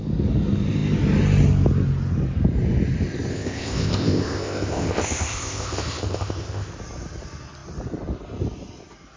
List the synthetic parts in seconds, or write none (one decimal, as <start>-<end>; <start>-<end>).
3.3-6.7